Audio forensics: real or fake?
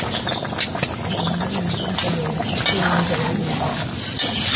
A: real